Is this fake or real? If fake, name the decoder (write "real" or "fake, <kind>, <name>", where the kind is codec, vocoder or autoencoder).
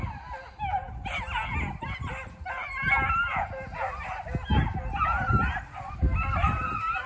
real